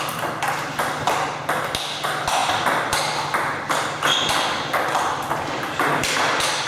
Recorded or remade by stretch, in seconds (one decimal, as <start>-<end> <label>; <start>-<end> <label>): 0.0-6.7 recorded